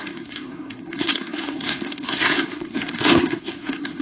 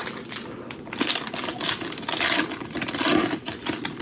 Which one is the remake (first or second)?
first